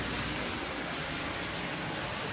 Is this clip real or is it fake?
real